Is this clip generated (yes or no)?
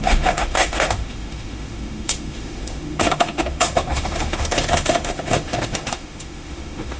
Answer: yes